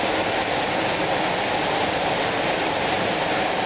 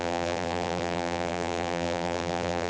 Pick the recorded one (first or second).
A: first